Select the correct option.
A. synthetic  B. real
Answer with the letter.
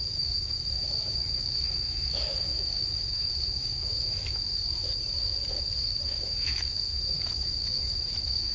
A